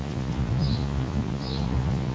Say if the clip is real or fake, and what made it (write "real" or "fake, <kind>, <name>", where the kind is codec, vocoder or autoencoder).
fake, vocoder, Vocos